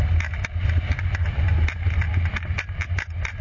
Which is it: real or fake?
real